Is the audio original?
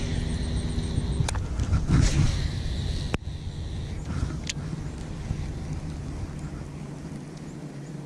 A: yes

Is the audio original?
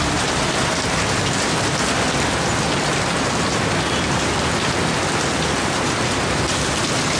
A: yes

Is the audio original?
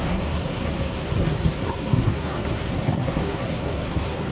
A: no